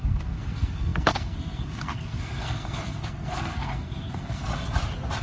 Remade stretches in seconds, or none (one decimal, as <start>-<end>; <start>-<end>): 0.0-4.5